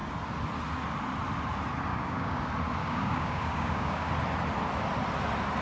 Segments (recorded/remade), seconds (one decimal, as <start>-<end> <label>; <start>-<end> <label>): 0.0-1.9 recorded; 1.9-2.4 remade; 2.4-2.8 recorded; 2.8-4.1 remade; 4.1-5.6 recorded